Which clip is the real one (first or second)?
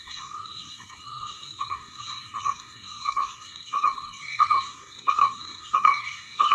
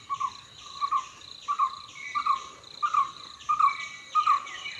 second